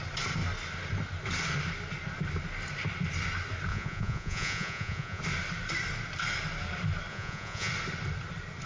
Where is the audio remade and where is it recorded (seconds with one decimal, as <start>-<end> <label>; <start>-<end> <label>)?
0.0-3.7 recorded; 3.7-5.2 remade; 5.2-7.1 recorded; 7.1-7.7 remade; 7.7-8.7 recorded